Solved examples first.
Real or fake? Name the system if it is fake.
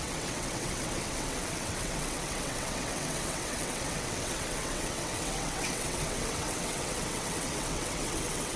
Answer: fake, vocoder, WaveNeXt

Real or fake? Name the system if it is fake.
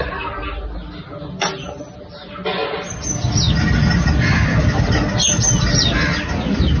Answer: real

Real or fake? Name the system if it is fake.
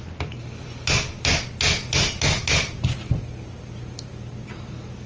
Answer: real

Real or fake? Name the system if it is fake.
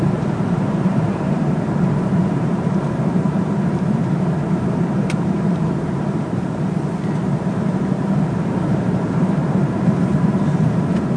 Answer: fake, vocoder, BigVGAN v2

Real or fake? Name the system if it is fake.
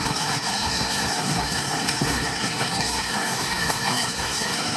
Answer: fake, codec, SNAC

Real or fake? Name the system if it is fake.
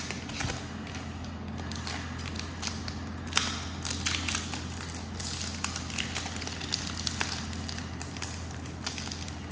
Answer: real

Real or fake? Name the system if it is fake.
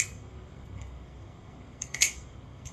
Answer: fake, codec, SNAC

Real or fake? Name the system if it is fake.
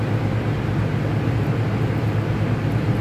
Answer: real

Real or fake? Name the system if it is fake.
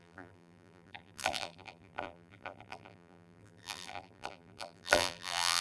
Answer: fake, vocoder, BigVGAN v2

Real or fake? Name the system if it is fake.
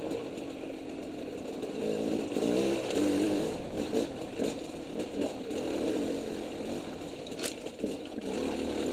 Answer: fake, vocoder, BigVGAN v2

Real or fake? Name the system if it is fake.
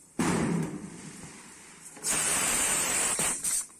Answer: fake, vocoder, BigVGAN v2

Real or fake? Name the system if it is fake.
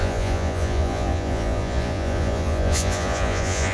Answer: fake, vocoder, Vocos